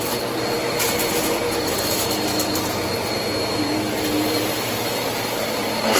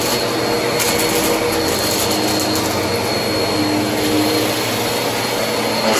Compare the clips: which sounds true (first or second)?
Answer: second